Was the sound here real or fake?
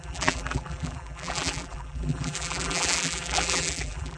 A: fake